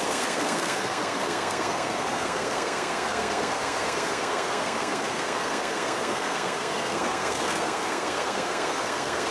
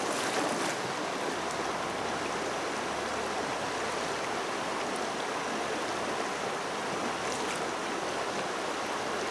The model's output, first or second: first